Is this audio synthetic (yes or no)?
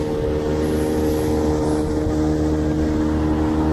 no